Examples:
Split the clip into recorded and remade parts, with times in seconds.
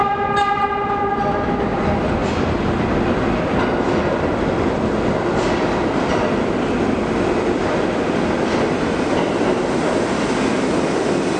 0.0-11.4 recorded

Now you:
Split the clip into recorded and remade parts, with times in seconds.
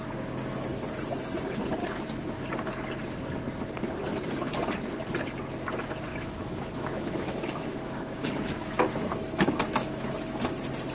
0.0-1.8 recorded; 1.8-2.4 remade; 2.4-6.1 recorded; 6.1-10.4 remade; 10.4-10.9 recorded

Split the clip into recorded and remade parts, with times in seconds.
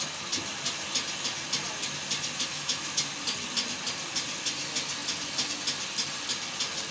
0.0-2.5 recorded; 2.5-3.0 remade; 3.0-6.9 recorded